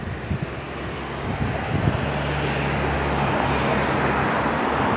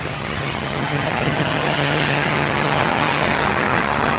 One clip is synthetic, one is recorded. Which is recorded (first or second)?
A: first